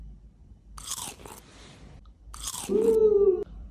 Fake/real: fake